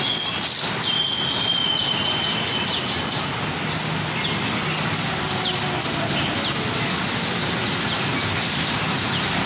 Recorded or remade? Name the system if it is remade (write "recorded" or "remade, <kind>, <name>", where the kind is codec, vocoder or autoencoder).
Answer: recorded